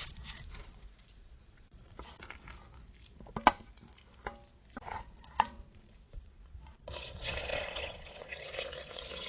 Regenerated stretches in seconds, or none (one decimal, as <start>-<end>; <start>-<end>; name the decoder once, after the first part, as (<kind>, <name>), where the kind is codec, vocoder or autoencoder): 0.0-2.2 (vocoder, Vocos); 4.9-9.3

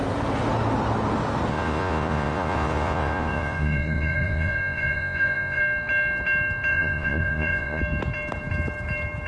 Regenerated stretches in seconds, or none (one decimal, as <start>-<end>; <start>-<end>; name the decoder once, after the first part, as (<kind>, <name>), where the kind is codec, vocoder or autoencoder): 1.5-5.6 (vocoder, Vocos); 6.7-7.8

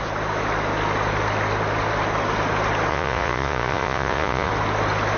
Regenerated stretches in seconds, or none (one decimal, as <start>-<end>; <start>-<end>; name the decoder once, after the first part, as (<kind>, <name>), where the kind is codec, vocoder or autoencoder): 2.9-4.5 (vocoder, Vocos)

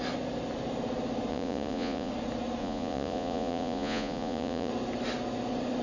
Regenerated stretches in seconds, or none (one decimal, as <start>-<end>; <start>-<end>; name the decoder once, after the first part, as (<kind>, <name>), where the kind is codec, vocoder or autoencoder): 1.3-2.1 (vocoder, Vocos); 2.6-4.7